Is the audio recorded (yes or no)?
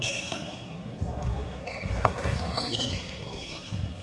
no